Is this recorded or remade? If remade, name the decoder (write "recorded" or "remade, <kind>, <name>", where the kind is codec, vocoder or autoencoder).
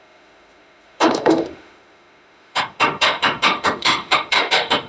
remade, autoencoder, DAC-VAE